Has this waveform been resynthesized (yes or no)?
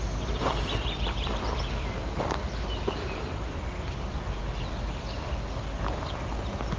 no